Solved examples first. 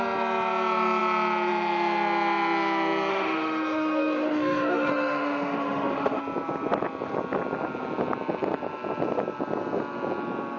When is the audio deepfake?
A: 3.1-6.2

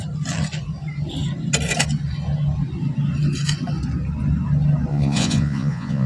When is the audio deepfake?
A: 4.9-6.1

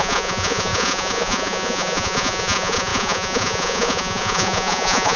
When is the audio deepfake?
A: 0.0-5.2

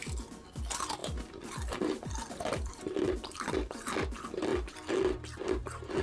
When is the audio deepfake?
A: 0.0-0.6; 1.0-3.5

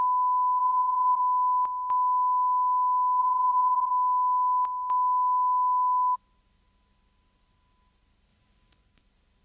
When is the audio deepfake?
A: 0.6-1.2; 3.2-3.9; 8.3-9.0

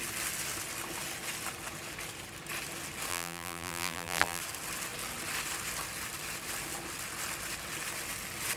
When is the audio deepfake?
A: 3.1-4.4

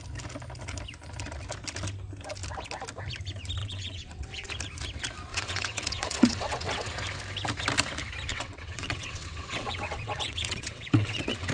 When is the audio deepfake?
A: 3.6-4.5; 5.3-6.9; 8.3-11.5

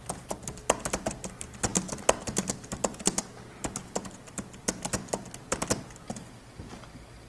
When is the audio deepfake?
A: none